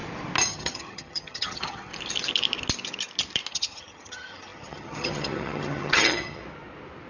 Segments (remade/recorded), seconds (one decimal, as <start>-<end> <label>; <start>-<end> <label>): 0.0-0.5 recorded; 0.5-1.9 remade; 1.9-3.5 recorded; 3.5-6.4 remade; 6.4-7.1 recorded